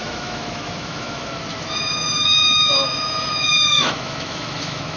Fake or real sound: fake